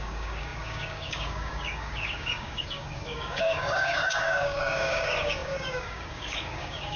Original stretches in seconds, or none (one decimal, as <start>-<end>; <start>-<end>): none